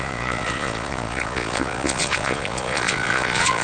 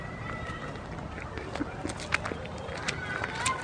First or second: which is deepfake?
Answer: first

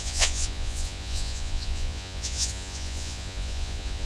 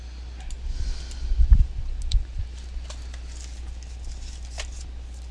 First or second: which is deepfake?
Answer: first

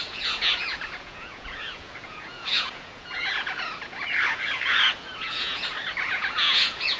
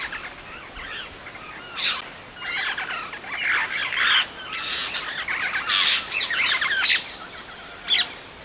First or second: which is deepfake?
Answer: first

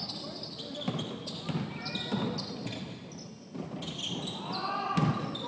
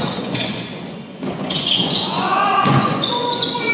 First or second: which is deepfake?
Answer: second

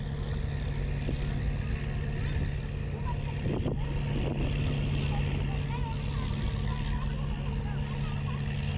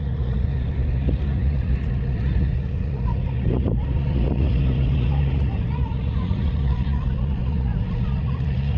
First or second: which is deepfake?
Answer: second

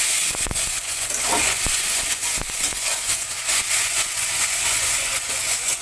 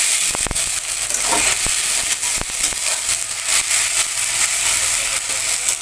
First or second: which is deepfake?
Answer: first